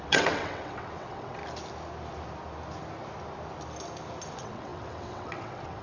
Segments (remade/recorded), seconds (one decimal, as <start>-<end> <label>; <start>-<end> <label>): 0.0-1.4 remade; 1.4-4.3 recorded; 4.3-5.8 remade